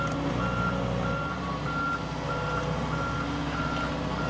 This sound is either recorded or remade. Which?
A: recorded